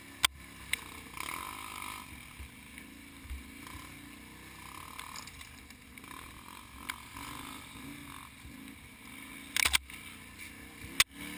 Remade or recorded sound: recorded